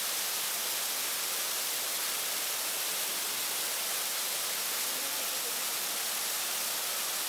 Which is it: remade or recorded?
recorded